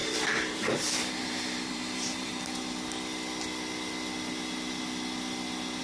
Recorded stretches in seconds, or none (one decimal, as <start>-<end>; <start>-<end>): 2.3-5.8